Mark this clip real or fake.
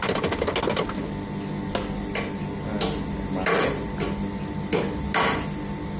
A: real